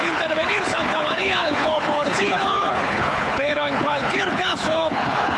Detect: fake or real fake